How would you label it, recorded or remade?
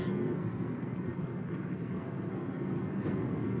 remade